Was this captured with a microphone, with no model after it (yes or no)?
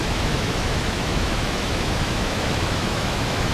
no